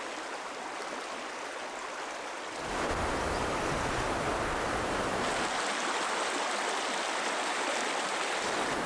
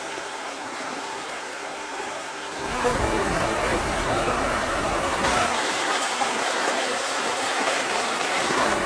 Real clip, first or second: first